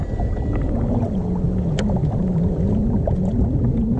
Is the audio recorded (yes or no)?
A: yes